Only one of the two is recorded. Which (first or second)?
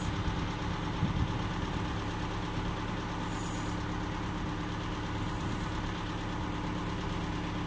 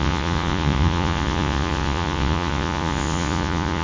first